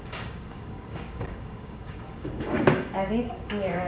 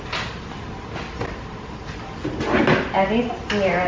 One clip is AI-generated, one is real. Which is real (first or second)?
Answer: second